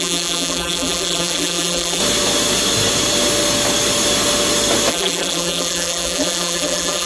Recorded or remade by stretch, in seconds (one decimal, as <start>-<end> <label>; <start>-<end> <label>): 0.0-2.0 remade; 2.0-4.9 recorded; 4.9-7.1 remade